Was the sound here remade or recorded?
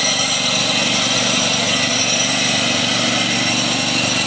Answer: recorded